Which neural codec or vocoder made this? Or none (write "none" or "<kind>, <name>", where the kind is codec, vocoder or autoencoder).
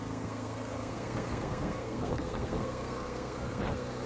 codec, SNAC